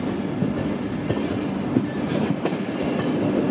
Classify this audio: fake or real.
real